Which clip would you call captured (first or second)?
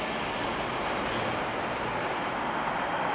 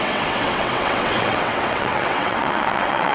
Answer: first